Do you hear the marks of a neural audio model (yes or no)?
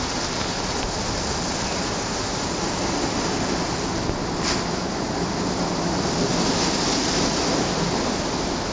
no